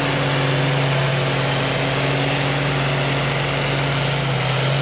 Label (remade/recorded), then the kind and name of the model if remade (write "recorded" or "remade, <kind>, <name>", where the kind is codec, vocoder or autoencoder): recorded